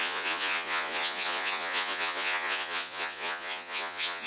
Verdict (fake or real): fake